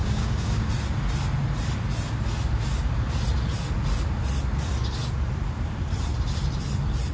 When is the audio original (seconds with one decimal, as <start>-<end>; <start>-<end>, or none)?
0.7-7.1